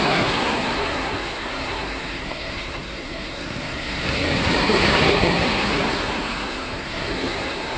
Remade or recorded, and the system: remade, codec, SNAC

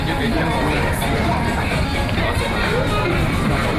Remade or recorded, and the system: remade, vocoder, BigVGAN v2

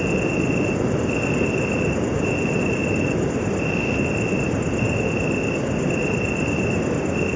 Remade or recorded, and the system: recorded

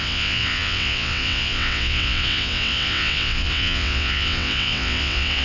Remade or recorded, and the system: remade, vocoder, WaveNeXt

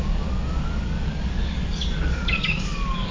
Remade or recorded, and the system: remade, codec, DAC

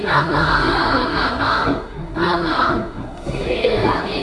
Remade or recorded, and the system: remade, codec, SNAC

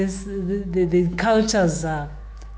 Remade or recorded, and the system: remade, autoencoder, DAC-VAE